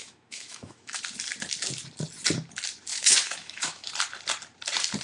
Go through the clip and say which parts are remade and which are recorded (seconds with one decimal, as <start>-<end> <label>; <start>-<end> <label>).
0.0-1.0 remade; 1.0-2.9 recorded; 2.9-3.9 remade; 3.9-5.0 recorded